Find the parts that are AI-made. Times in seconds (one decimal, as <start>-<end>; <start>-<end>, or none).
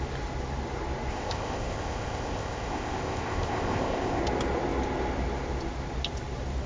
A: 1.1-4.2